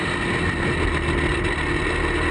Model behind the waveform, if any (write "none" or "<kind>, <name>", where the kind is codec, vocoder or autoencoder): none